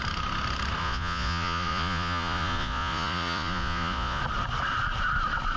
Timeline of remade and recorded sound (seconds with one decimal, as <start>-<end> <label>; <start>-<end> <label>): 0.0-0.8 recorded; 0.8-4.2 remade; 4.2-5.6 recorded